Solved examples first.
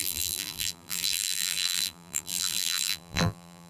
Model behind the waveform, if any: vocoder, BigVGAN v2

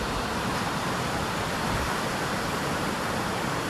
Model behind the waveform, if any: vocoder, BigVGAN v2